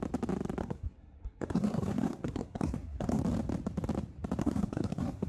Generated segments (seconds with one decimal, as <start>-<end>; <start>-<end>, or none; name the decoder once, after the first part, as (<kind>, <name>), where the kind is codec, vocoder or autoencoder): 0.6-3.2 (codec, SNAC); 4.4-5.3